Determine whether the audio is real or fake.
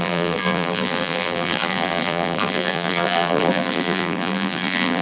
fake